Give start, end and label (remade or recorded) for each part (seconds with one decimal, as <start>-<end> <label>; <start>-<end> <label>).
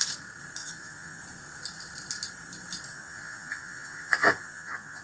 0.0-0.6 recorded; 0.6-1.2 remade; 1.2-2.9 recorded; 2.9-5.0 remade